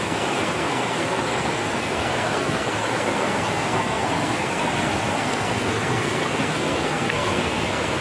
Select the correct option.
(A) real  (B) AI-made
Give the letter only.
B